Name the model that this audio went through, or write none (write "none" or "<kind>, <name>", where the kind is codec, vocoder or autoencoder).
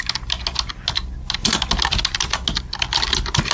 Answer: none